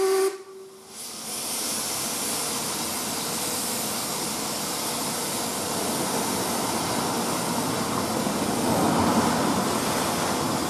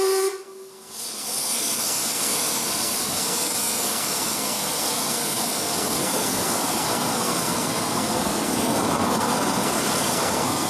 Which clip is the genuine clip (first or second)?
first